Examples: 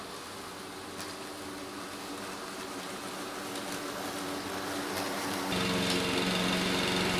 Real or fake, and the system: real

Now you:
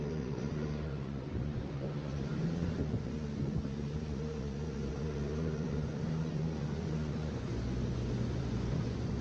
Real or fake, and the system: fake, vocoder, Vocos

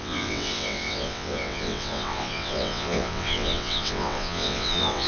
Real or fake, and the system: fake, vocoder, WaveNeXt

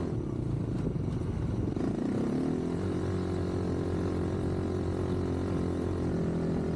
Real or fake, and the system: real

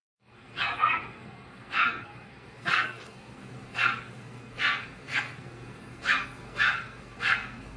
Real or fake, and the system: fake, codec, SNAC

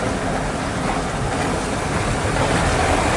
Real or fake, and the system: real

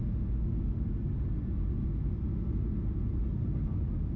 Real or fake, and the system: real